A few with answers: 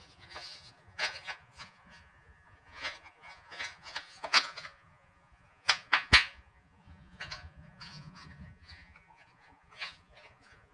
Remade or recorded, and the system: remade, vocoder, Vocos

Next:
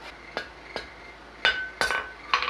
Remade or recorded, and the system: recorded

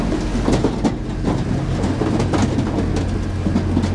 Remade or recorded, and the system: recorded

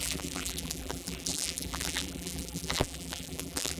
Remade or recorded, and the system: remade, vocoder, BigVGAN v2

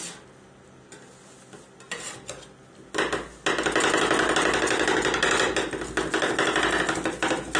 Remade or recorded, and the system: recorded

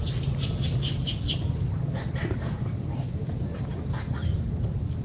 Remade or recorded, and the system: recorded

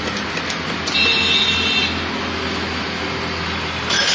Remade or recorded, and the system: recorded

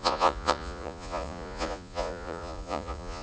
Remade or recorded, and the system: remade, vocoder, Vocos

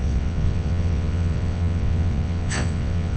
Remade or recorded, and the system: remade, vocoder, WaveNeXt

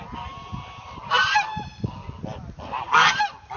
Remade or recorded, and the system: recorded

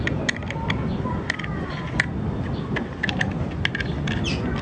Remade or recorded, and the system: recorded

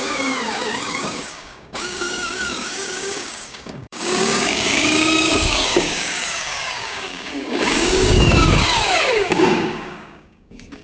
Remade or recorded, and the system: remade, codec, DAC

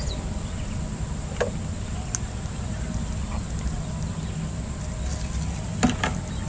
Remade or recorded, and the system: recorded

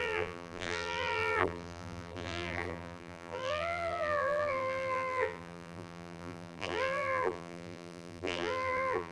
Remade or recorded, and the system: remade, vocoder, BigVGAN v2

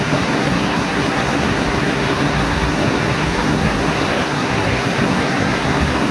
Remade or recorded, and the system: remade, codec, SNAC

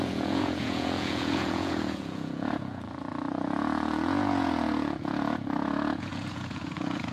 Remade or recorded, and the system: remade, vocoder, Vocos